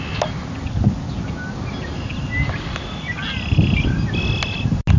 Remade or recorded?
recorded